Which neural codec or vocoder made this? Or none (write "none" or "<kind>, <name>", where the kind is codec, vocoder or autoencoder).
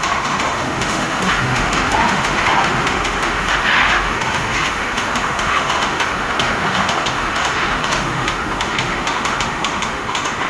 autoencoder, DAC-VAE